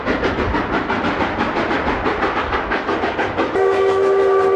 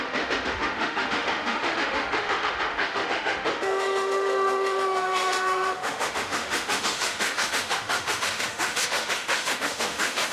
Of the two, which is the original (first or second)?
first